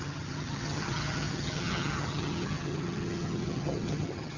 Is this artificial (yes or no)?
yes